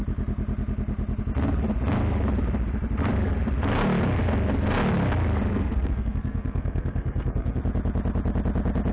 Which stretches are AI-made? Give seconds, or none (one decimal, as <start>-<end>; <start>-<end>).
5.5-7.6